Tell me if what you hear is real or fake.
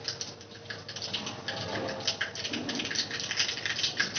real